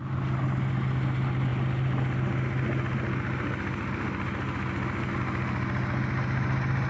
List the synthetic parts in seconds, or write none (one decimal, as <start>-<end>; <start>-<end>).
none